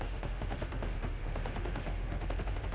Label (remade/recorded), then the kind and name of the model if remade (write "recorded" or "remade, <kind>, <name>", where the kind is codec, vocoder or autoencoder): remade, autoencoder, DAC-VAE